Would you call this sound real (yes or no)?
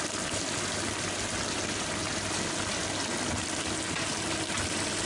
yes